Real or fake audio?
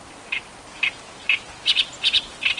real